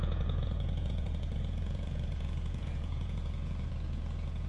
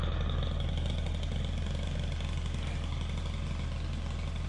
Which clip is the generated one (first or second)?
first